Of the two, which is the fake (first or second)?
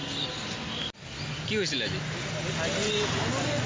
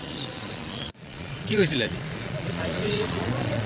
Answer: second